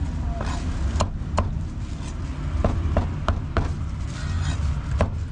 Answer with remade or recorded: recorded